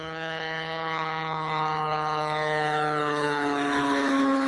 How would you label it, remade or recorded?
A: remade